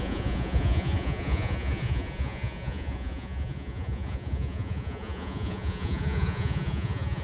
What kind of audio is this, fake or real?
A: fake